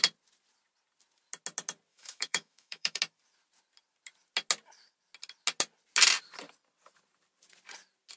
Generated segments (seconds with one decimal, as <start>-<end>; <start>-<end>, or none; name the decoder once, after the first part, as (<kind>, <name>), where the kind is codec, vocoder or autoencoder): 1.9-3.0 (autoencoder, DAC-VAE)